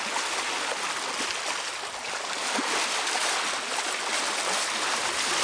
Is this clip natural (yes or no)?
yes